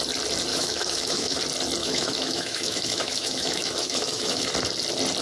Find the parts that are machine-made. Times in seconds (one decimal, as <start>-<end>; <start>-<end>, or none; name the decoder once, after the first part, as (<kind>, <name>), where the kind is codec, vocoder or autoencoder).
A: 0.5-1.4 (autoencoder, DAC-VAE); 1.8-4.5